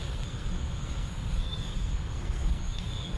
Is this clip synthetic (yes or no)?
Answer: yes